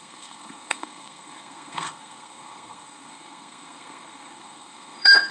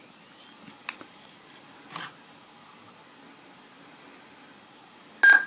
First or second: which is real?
second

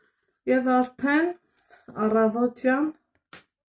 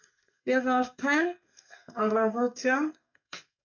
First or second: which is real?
first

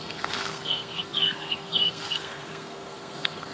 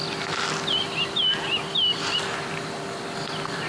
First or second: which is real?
second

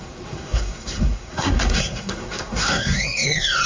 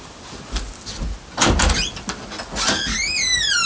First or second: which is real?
second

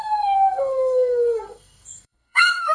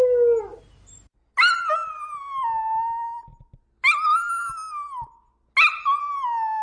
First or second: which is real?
second